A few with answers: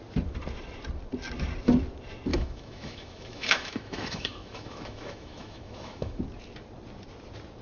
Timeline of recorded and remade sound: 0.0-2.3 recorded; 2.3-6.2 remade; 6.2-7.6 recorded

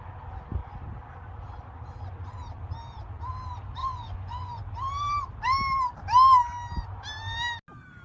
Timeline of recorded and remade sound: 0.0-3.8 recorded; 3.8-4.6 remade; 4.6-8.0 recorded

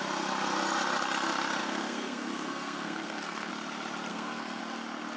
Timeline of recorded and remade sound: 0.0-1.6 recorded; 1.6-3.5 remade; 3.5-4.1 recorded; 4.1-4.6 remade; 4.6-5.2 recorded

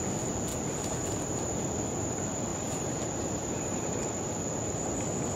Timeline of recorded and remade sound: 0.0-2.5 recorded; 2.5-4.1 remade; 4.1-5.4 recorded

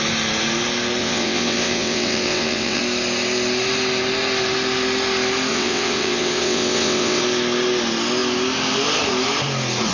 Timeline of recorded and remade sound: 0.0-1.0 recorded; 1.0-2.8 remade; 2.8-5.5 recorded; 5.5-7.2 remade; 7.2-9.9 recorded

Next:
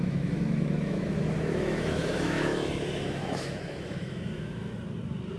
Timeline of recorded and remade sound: 0.0-4.7 remade; 4.7-5.4 recorded